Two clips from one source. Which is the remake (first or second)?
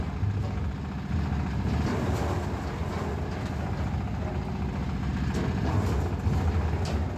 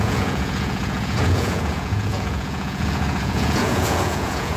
second